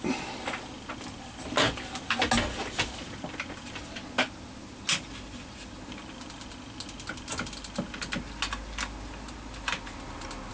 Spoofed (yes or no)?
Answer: no